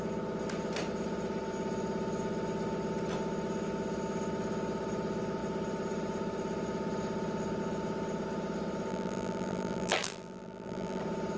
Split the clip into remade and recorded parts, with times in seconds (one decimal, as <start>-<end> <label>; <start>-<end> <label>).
0.0-8.9 recorded; 8.9-11.0 remade; 11.0-11.4 recorded

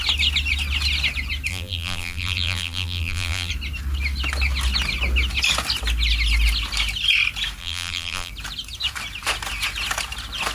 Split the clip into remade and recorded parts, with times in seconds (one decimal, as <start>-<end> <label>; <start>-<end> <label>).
0.0-1.5 recorded; 1.5-3.5 remade; 3.5-7.6 recorded; 7.6-8.3 remade; 8.3-10.5 recorded

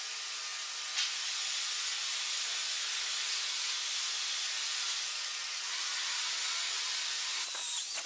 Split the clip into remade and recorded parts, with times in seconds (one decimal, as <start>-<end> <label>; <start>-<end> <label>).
0.0-8.1 recorded

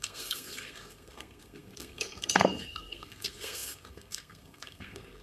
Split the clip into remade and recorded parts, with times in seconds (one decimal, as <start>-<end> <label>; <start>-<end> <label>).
0.0-5.2 remade

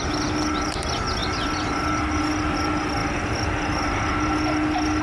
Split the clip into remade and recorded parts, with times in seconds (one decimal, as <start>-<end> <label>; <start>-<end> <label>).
0.0-3.0 recorded; 3.0-4.2 remade; 4.2-5.0 recorded

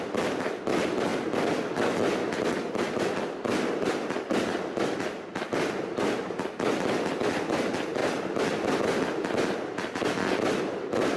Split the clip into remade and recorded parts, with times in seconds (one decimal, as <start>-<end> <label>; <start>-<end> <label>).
0.0-1.1 recorded; 1.1-5.3 remade; 5.3-11.2 recorded

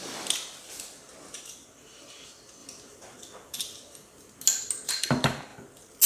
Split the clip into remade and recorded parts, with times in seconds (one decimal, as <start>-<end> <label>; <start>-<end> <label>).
0.0-6.1 recorded